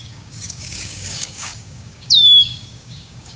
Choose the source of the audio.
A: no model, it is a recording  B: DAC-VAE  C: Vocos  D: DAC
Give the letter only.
D